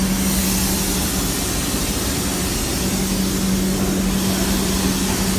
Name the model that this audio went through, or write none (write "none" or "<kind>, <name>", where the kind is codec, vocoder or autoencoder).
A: none